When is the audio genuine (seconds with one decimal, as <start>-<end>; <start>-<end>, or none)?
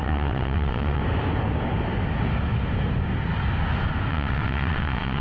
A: 1.0-4.1